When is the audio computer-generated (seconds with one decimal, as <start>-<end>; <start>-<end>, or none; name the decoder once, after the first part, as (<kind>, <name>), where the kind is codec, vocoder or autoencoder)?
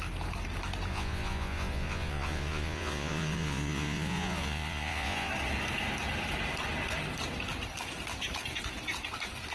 0.9-5.3 (vocoder, Vocos)